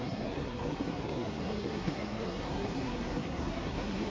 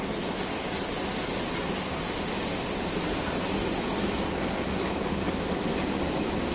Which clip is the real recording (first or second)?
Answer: second